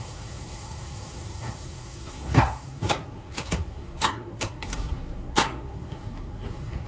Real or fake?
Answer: fake